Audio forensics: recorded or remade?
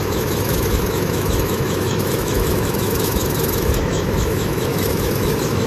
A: remade